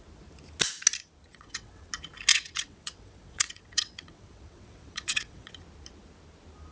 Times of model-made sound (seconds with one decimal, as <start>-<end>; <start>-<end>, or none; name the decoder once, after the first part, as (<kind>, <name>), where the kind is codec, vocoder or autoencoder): 1.3-1.9 (vocoder, WaveNeXt); 2.3-5.5